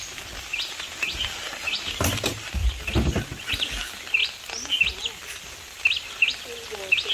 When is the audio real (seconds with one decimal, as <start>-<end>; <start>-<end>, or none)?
0.0-7.1